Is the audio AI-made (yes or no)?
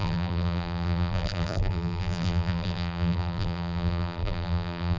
yes